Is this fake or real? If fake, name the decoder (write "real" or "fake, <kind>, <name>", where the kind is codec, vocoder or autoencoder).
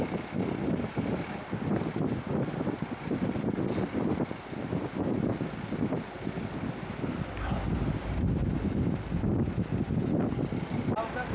real